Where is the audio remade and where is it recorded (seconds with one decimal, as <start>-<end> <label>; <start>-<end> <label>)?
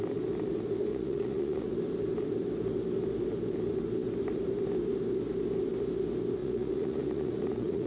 0.0-0.9 recorded; 0.9-1.8 remade; 1.8-6.4 recorded; 6.4-7.9 remade